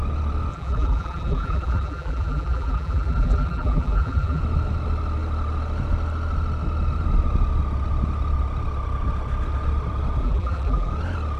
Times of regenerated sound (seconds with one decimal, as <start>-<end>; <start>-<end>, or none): 0.5-4.4; 10.2-10.9